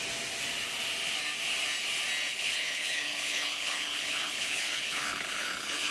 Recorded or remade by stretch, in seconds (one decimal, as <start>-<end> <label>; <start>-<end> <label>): 0.0-2.3 recorded; 2.3-5.9 remade

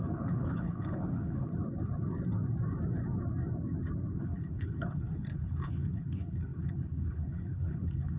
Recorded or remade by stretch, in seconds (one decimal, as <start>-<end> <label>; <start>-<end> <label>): 0.0-1.5 remade; 1.5-4.2 recorded; 4.2-8.2 remade

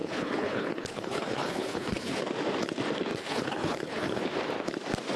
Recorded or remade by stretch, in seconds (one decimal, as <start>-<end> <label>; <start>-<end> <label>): 0.0-2.2 remade; 2.2-3.1 recorded; 3.1-4.2 remade; 4.2-5.2 recorded

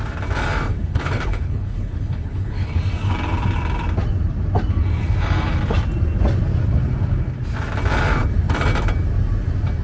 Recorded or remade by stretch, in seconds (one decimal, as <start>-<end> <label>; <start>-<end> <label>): 0.0-0.7 recorded; 0.7-2.8 remade; 2.8-9.8 recorded

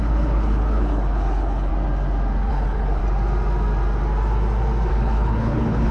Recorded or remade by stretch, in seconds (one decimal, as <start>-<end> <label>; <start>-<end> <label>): 0.0-1.7 remade; 1.7-2.5 recorded; 2.5-3.0 remade; 3.0-4.9 recorded; 4.9-5.9 remade

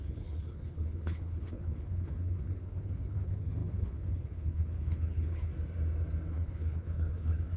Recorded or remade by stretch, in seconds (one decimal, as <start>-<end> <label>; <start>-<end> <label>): 0.0-5.5 remade; 5.5-6.3 recorded; 6.3-7.6 remade

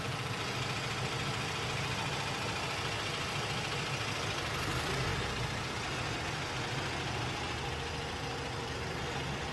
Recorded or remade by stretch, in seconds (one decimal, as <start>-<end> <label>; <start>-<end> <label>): 0.0-9.5 recorded